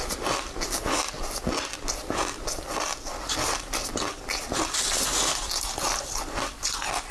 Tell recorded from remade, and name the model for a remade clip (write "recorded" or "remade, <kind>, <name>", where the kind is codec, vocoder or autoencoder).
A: recorded